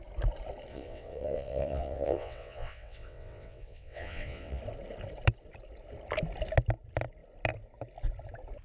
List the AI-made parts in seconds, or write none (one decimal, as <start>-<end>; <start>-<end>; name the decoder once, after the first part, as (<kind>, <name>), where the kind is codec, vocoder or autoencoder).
0.7-4.6 (vocoder, WaveNeXt)

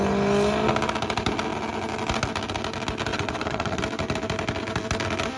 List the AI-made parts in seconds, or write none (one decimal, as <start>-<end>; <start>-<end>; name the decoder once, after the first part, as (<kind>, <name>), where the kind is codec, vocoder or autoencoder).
3.1-3.8 (vocoder, WaveNeXt)

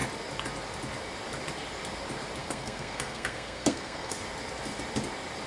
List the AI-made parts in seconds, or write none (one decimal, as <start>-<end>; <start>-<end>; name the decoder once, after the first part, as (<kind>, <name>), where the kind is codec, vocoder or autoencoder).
2.4-4.2 (codec, SNAC)

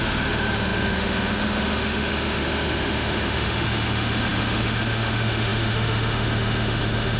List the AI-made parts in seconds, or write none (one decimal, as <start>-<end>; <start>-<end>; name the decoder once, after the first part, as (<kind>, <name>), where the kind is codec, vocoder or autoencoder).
0.0-7.2 (autoencoder, DAC-VAE)

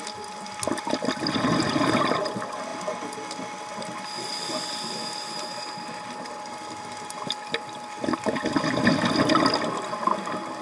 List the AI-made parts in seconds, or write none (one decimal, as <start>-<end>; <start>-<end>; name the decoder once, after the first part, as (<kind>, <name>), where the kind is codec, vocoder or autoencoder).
none